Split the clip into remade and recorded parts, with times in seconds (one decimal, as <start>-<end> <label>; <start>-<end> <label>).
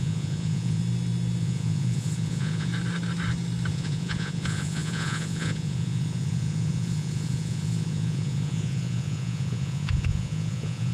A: 0.0-0.8 remade; 0.8-1.4 recorded; 1.4-2.7 remade; 2.7-3.7 recorded; 3.7-10.9 remade